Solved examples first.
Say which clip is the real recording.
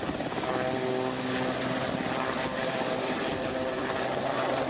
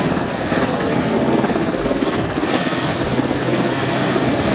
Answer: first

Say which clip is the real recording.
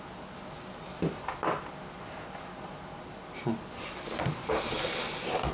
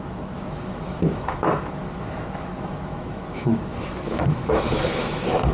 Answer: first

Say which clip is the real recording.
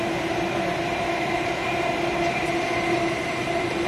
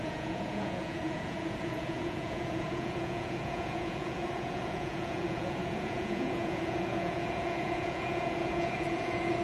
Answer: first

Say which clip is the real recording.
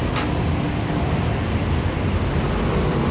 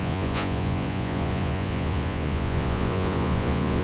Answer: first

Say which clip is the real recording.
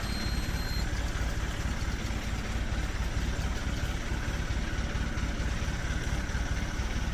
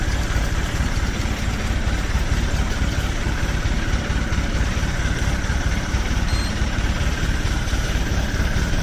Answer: first